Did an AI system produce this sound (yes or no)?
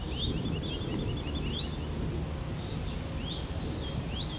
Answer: no